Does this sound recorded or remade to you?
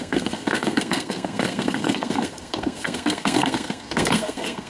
remade